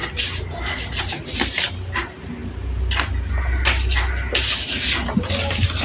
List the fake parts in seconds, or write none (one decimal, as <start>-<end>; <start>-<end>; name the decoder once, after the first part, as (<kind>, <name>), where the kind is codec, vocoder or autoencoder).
none